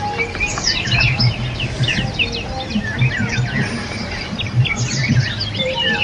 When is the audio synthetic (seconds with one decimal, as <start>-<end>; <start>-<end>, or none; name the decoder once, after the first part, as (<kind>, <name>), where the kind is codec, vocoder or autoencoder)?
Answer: 0.0-1.9 (vocoder, BigVGAN v2); 3.3-6.0